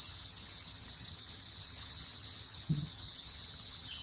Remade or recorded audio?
remade